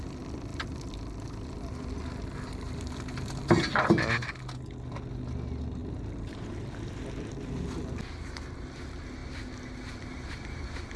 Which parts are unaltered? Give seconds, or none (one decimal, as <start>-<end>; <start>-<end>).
0.0-11.0